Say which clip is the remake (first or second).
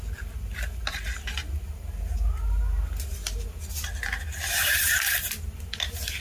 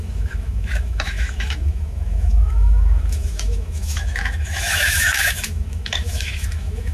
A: second